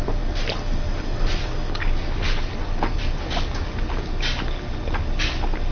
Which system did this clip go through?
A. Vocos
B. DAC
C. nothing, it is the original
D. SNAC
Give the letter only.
C